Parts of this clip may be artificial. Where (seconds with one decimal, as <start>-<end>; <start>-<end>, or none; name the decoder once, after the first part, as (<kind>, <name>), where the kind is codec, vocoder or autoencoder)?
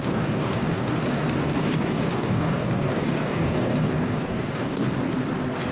0.0-0.9 (codec, DAC); 1.5-4.9